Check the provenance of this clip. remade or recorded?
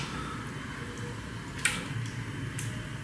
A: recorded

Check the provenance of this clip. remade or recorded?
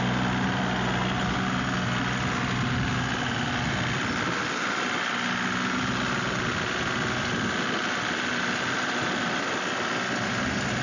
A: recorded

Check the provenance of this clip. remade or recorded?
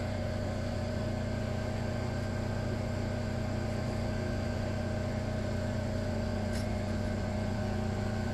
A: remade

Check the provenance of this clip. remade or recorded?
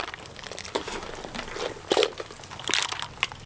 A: remade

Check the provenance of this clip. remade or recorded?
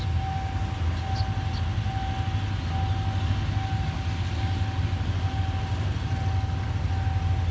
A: recorded